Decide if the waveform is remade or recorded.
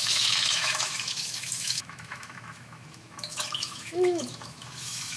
remade